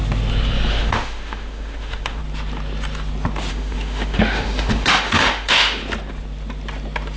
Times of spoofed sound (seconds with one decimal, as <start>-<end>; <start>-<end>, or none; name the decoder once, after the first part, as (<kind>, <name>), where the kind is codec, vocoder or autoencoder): 0.7-2.2 (autoencoder, DAC-VAE); 3.5-5.8